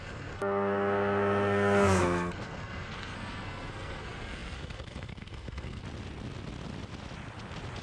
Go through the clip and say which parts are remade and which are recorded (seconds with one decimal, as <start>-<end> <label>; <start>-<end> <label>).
0.0-5.8 remade; 5.8-7.8 recorded